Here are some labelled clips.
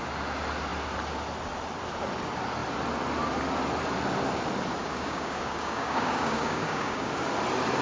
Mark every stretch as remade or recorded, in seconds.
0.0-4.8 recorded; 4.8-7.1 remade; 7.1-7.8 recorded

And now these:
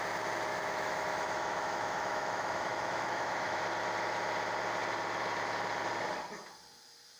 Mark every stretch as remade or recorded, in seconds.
0.0-0.5 recorded; 0.5-3.6 remade; 3.6-7.2 recorded

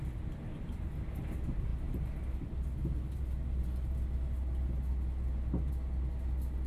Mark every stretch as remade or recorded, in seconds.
0.0-6.7 recorded